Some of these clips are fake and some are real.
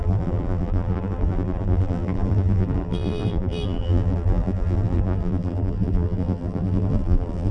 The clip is fake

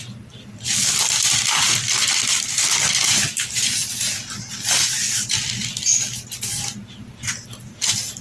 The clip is real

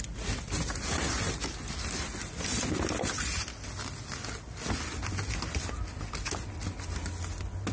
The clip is real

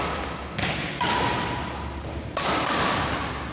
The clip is real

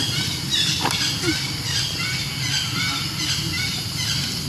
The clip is real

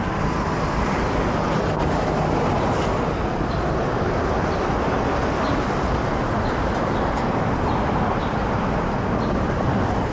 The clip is real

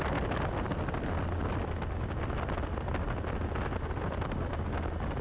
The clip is real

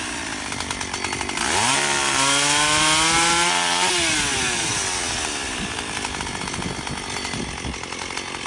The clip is real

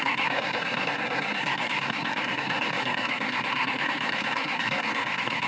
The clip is fake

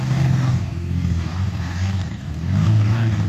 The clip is fake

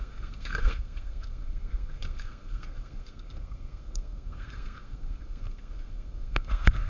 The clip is fake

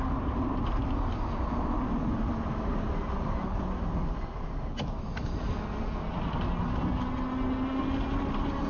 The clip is real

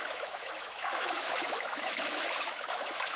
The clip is fake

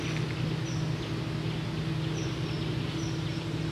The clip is real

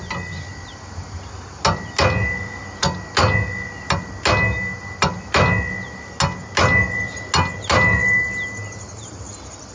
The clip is real